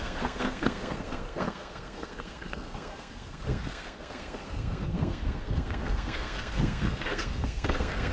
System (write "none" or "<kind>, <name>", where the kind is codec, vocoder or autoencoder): codec, SNAC